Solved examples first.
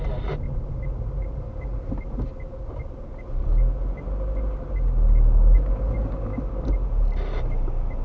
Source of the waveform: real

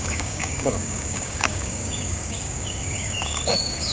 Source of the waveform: fake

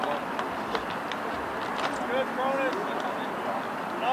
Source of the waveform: real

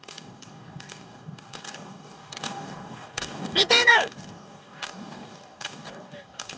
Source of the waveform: fake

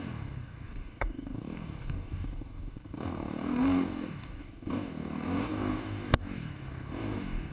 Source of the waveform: fake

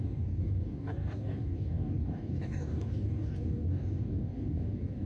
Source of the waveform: fake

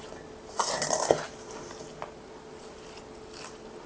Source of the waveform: real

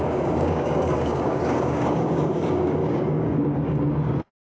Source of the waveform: fake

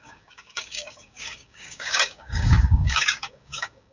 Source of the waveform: fake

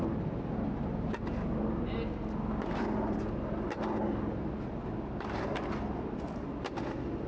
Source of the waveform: real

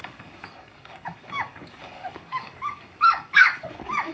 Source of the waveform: fake